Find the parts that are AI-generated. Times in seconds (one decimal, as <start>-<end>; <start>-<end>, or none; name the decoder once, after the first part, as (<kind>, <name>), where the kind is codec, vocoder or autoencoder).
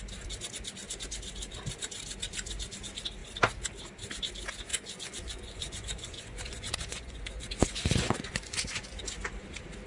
4.7-9.0 (vocoder, Vocos)